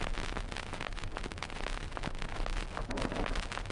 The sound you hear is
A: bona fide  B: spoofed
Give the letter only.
A